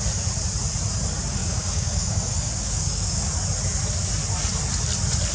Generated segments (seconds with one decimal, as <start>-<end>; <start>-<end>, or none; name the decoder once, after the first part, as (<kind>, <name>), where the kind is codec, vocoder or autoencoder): 1.4-3.3 (codec, DAC)